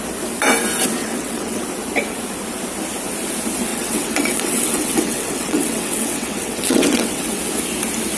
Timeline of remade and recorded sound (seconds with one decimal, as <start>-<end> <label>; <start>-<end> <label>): 0.0-1.0 recorded; 1.0-1.6 remade; 1.6-3.7 recorded; 3.7-7.4 remade; 7.4-8.2 recorded

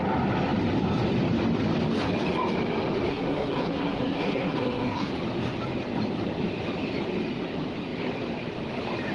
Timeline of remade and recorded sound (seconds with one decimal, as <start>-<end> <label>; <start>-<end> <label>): 0.0-3.1 recorded; 3.1-5.1 remade; 5.1-9.1 recorded

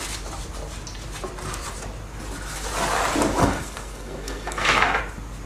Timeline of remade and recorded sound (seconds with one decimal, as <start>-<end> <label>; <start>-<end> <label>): 0.0-3.4 recorded; 3.4-5.0 remade; 5.0-5.5 recorded

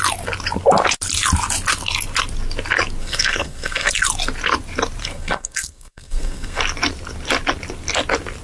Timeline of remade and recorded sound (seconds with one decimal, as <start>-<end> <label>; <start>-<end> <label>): 0.0-3.0 recorded; 3.0-3.9 remade; 3.9-5.0 recorded; 5.0-6.6 remade; 6.6-8.4 recorded

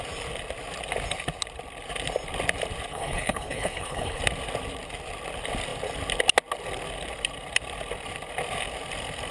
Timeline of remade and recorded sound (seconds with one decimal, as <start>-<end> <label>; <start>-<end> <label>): 0.0-2.9 recorded; 2.9-4.2 remade; 4.2-9.3 recorded

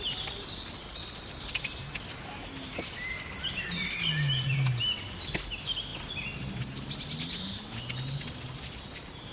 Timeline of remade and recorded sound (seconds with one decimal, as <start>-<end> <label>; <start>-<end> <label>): 0.0-9.3 recorded

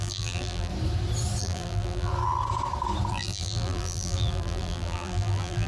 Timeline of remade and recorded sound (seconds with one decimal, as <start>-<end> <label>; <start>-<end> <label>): 0.0-0.7 remade; 0.7-1.4 recorded; 1.4-2.1 remade; 2.1-3.1 recorded; 3.1-5.7 remade